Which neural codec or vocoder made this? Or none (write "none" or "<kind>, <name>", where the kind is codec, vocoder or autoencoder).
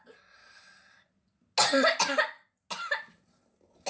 none